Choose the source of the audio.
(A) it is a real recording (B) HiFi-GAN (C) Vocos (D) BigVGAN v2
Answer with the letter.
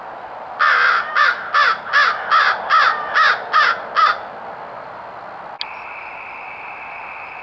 A